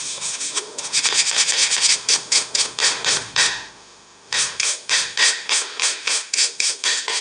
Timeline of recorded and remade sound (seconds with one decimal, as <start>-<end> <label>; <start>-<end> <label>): 0.0-7.2 remade